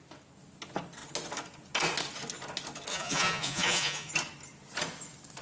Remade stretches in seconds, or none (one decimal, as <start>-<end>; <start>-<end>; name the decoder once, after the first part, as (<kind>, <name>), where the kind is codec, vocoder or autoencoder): 2.9-4.1 (vocoder, Vocos)